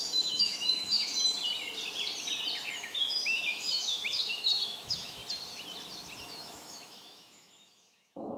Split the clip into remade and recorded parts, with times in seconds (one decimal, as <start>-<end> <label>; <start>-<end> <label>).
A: 0.0-1.1 remade; 1.1-2.8 recorded; 2.8-5.2 remade; 5.2-6.2 recorded; 6.2-8.4 remade

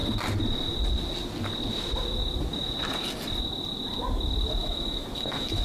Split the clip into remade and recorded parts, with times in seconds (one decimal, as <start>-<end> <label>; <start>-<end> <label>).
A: 0.0-4.6 recorded; 4.6-5.6 remade

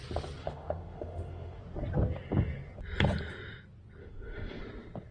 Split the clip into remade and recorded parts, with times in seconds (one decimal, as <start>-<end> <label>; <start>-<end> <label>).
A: 0.0-0.4 recorded; 0.4-1.6 remade; 1.6-4.0 recorded; 4.0-4.6 remade; 4.6-5.1 recorded

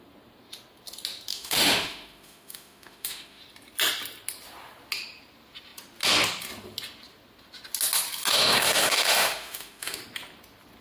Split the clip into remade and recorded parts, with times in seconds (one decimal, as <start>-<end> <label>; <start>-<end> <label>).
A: 0.0-1.3 recorded; 1.3-3.4 remade; 3.4-8.3 recorded; 8.3-10.0 remade; 10.0-10.8 recorded

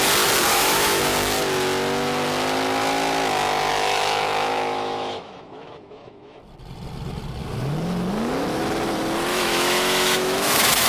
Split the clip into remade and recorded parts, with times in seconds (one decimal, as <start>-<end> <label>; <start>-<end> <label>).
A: 0.0-0.5 recorded; 0.5-1.0 remade; 1.0-3.7 recorded; 3.7-6.4 remade; 6.4-9.3 recorded; 9.3-10.9 remade

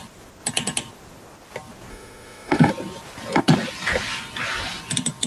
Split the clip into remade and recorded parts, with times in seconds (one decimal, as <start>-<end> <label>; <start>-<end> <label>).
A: 0.0-1.9 recorded; 1.9-2.7 remade; 2.7-5.3 recorded